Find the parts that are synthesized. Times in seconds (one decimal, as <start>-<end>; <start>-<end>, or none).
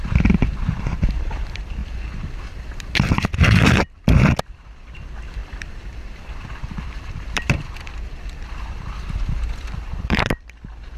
0.0-1.8; 4.4-11.0